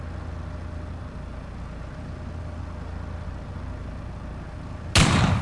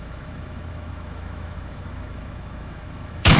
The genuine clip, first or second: first